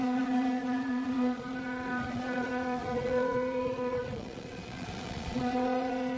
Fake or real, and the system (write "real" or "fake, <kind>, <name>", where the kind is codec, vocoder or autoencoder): fake, vocoder, Vocos